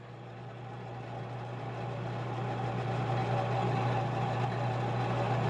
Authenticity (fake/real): real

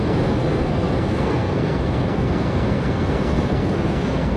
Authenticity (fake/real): fake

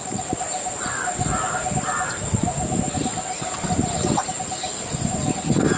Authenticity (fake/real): real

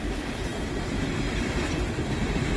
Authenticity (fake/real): real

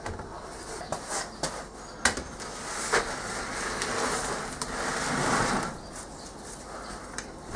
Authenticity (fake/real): real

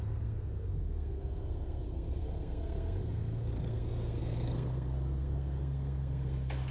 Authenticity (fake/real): fake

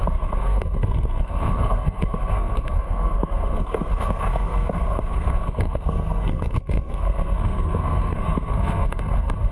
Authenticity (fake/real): fake